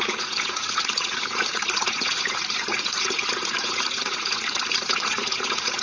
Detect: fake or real fake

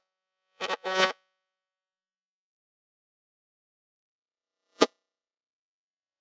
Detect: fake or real fake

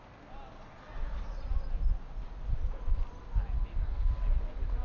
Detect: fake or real real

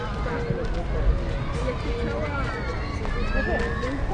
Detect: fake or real real